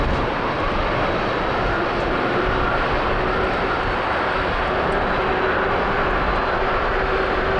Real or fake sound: real